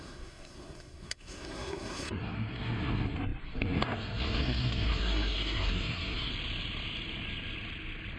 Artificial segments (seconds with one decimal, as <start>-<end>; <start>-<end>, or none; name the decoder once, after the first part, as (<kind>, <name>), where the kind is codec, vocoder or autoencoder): 0.0-6.3 (codec, SNAC)